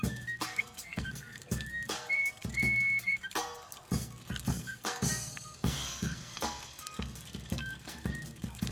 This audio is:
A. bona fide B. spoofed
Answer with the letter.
B